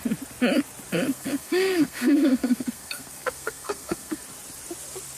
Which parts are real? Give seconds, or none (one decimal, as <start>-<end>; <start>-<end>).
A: 0.0-1.1; 4.2-5.2

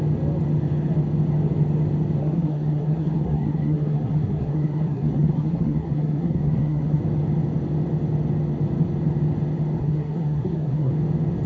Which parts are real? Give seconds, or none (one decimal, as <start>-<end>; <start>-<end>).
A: 0.0-2.2; 7.0-9.8; 10.9-11.5

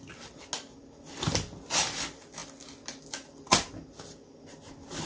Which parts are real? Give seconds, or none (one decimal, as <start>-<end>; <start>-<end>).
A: 0.0-5.1